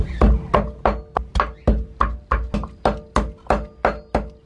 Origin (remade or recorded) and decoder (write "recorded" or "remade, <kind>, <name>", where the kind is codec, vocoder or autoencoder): recorded